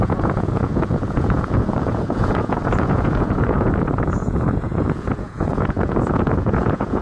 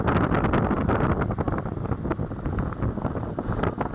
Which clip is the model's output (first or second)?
first